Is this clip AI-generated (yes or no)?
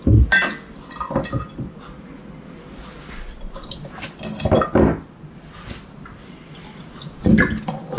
no